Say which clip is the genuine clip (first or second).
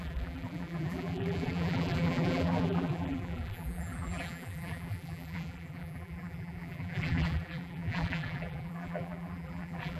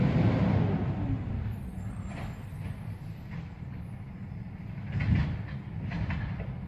second